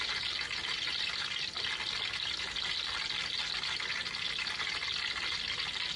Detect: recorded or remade recorded